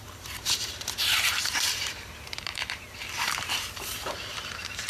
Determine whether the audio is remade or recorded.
remade